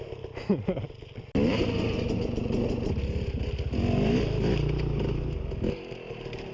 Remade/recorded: recorded